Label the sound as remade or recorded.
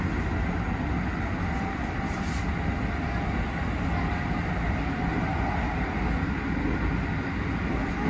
recorded